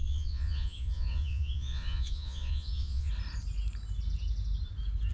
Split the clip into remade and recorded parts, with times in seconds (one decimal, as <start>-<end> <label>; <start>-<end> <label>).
0.0-3.1 remade; 3.1-5.1 recorded